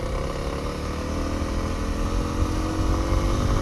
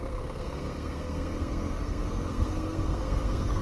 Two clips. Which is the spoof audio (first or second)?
second